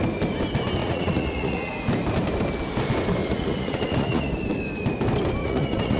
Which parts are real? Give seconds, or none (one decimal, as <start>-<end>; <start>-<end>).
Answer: 0.0-0.8; 1.7-3.2; 4.3-5.4